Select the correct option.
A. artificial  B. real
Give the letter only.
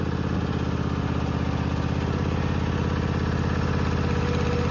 B